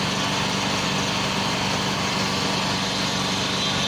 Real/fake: real